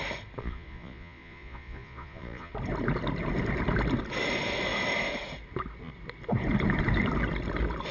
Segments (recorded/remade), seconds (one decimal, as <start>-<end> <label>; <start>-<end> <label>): 0.0-0.4 recorded; 0.4-2.5 remade; 2.5-7.9 recorded